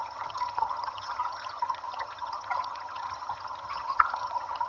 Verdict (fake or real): fake